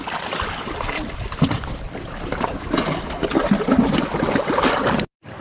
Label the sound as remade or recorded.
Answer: recorded